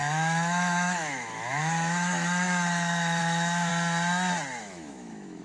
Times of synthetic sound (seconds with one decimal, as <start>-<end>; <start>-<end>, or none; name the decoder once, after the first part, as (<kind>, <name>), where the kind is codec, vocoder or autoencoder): 0.0-3.7 (autoencoder, DAC-VAE); 4.6-5.4